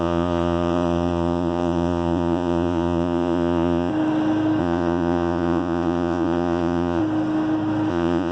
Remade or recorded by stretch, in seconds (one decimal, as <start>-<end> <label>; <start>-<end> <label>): 0.0-3.9 remade; 3.9-4.6 recorded; 4.6-7.0 remade; 7.0-7.9 recorded; 7.9-8.3 remade